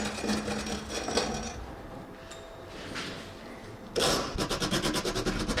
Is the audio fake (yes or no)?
no